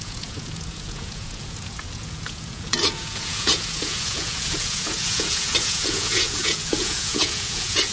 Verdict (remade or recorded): remade